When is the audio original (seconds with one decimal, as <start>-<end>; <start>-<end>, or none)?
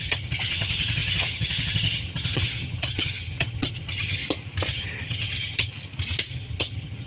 4.2-4.7; 5.7-6.3